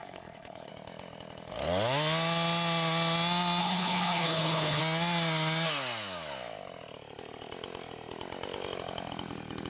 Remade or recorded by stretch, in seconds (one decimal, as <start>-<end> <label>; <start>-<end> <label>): 0.0-0.7 remade; 0.7-3.6 recorded; 3.6-4.8 remade; 4.8-9.7 recorded